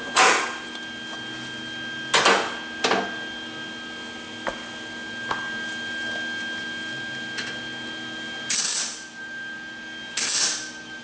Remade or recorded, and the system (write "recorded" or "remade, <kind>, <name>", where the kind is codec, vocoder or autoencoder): recorded